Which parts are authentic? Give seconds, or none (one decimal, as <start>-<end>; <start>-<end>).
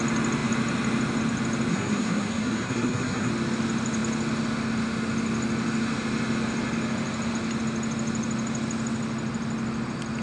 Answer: 0.0-1.7; 3.3-10.2